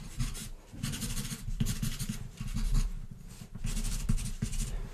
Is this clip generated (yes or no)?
yes